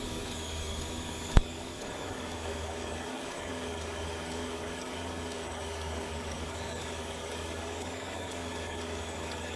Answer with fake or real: fake